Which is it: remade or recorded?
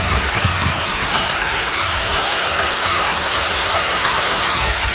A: remade